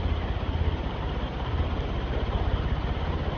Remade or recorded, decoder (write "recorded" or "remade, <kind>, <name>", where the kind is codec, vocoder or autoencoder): recorded